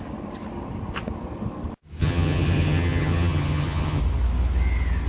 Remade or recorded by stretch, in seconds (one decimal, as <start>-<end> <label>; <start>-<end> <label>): 0.0-2.0 recorded; 2.0-4.0 remade; 4.0-5.1 recorded